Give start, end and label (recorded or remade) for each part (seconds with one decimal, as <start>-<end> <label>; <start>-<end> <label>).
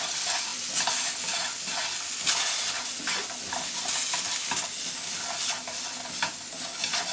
0.0-7.1 recorded